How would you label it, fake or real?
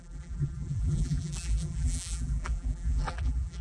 fake